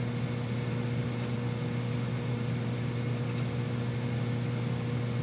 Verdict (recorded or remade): recorded